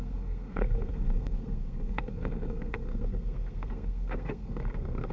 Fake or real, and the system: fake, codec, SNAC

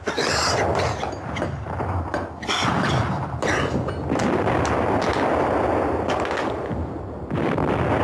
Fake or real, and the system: real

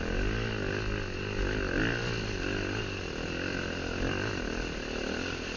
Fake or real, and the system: real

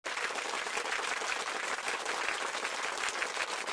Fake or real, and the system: real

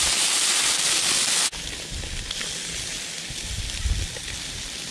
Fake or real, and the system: real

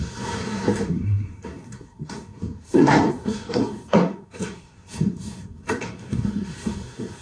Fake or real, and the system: fake, codec, SNAC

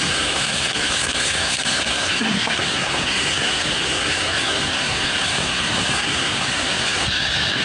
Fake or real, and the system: fake, codec, SNAC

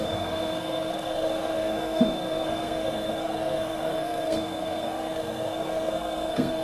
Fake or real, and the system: fake, codec, SNAC